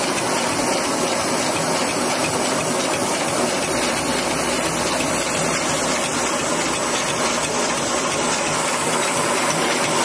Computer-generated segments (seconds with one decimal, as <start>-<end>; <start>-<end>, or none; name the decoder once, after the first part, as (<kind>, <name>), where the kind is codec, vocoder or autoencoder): 2.2-4.2 (vocoder, BigVGAN v2)